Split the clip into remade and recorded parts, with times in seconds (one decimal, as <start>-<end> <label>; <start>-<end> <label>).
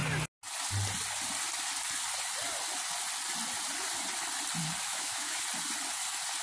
0.0-4.9 recorded; 4.9-5.4 remade; 5.4-6.4 recorded